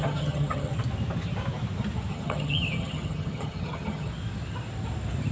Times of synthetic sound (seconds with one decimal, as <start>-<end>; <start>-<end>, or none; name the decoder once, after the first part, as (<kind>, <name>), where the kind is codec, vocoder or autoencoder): 0.0-0.7 (vocoder, HiFi-GAN); 2.1-4.1